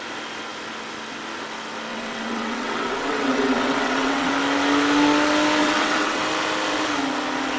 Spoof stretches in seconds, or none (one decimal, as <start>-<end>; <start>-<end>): 1.9-4.3; 5.6-6.2